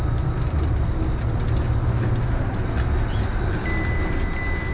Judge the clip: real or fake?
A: real